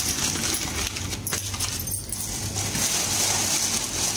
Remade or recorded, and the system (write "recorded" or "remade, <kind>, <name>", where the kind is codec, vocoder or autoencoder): recorded